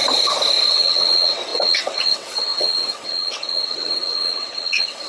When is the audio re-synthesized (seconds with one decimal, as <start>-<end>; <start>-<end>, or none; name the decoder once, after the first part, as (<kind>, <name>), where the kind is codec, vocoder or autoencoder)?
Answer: 0.7-5.1 (vocoder, WaveNeXt)